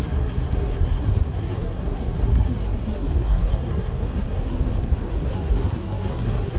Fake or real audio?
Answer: fake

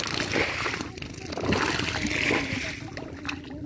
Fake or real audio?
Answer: real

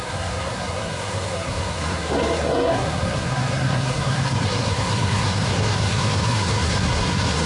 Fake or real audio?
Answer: fake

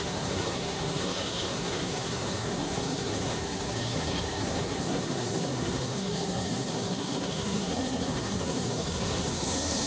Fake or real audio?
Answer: fake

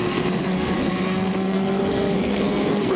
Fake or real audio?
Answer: fake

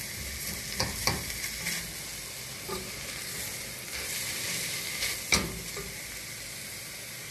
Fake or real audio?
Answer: real